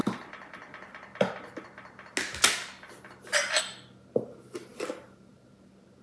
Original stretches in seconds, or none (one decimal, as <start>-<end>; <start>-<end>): 0.0-6.0